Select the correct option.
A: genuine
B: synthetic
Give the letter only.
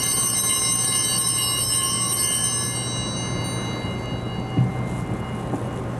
A